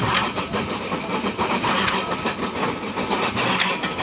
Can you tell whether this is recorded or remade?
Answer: recorded